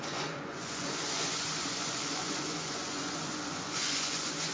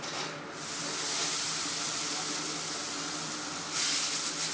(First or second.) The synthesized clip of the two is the first